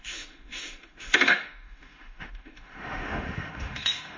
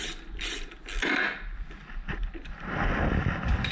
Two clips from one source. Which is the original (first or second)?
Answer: second